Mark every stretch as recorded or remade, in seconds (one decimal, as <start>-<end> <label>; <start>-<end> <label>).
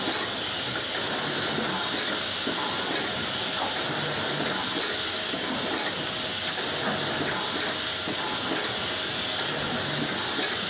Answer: 0.0-5.1 recorded; 5.1-5.6 remade; 5.6-10.7 recorded